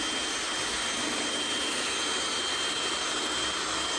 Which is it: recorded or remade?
recorded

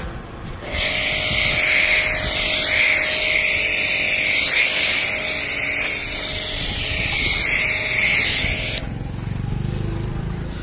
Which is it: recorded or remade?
recorded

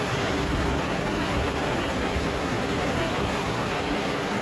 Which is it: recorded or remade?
remade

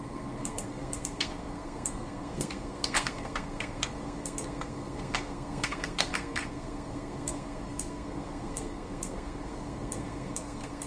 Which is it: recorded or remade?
remade